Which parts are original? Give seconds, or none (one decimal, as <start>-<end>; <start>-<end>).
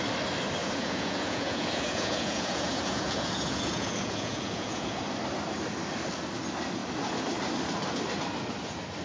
0.0-0.6; 5.0-9.0